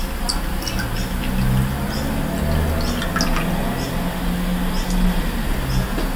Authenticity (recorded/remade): recorded